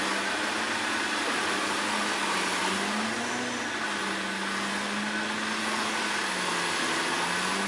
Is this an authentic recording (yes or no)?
yes